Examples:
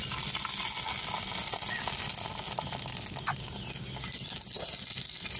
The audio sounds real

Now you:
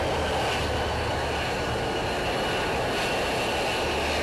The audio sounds real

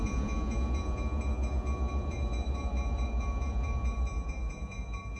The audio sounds fake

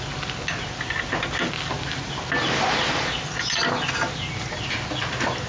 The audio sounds real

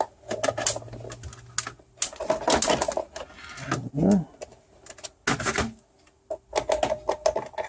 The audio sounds real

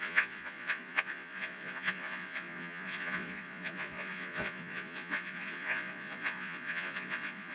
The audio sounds fake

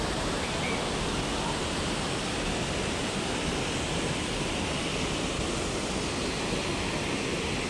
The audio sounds real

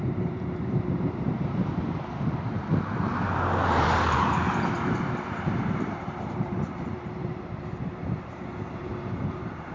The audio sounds fake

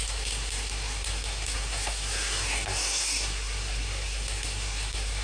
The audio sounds fake